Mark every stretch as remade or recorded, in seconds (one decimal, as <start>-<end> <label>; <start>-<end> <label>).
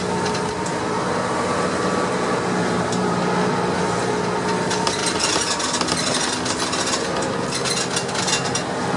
0.0-2.6 recorded; 2.6-3.2 remade; 3.2-5.0 recorded; 5.0-5.6 remade; 5.6-8.3 recorded; 8.3-9.0 remade